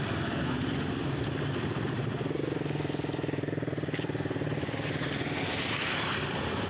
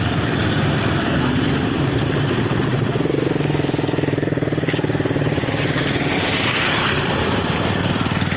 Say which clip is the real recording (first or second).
first